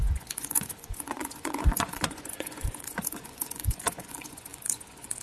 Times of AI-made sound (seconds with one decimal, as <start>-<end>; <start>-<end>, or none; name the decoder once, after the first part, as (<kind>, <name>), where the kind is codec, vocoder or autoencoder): 0.0-5.2 (vocoder, Vocos)